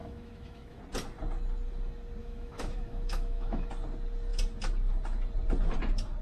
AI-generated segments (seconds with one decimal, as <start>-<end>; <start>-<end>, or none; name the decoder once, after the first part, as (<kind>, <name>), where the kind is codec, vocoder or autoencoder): 0.0-0.8 (autoencoder, DAC-VAE); 2.2-3.7